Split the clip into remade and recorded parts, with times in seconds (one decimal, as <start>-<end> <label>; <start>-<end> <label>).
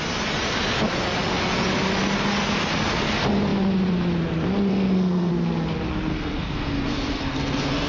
0.0-4.7 recorded; 4.7-5.3 remade; 5.3-6.1 recorded; 6.1-7.9 remade